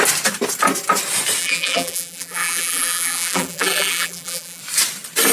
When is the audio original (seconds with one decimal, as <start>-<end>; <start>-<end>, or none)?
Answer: 0.0-1.4; 4.6-5.3